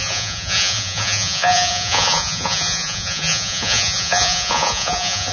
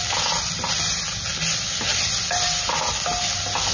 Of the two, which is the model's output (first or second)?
first